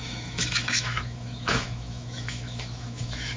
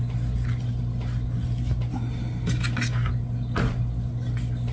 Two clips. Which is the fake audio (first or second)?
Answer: first